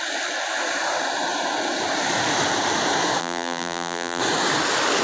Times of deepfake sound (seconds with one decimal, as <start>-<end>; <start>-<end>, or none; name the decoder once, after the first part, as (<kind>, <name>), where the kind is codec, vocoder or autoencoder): 3.2-4.2 (vocoder, BigVGAN v2)